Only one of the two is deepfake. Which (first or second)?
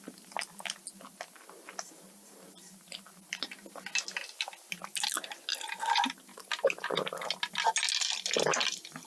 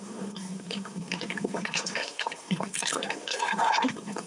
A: second